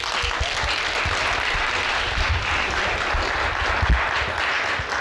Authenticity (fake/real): real